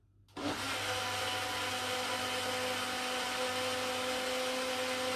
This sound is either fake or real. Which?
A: real